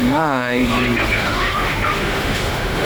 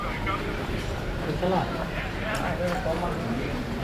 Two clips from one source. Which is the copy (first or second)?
first